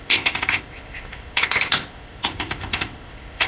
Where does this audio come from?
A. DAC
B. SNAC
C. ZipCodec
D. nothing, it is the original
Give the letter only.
C